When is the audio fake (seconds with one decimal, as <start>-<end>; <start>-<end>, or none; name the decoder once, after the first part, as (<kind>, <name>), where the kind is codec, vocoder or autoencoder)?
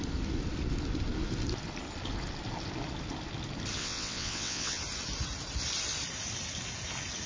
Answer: 3.8-4.8 (vocoder, WaveNeXt)